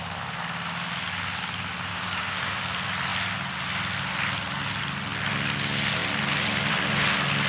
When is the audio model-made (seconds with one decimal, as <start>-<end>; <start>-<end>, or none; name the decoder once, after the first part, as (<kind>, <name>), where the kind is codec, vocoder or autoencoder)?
1.9-2.6 (codec, DAC)